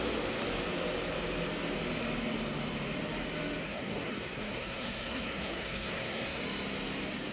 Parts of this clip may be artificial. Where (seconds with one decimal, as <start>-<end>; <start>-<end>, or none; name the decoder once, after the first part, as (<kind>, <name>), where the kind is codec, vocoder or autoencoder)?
3.6-6.4 (codec, SNAC)